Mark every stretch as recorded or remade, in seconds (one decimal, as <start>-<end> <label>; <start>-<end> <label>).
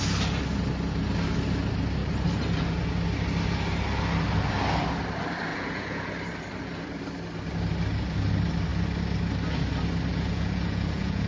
0.0-5.5 recorded; 5.5-6.1 remade; 6.1-10.1 recorded; 10.1-11.3 remade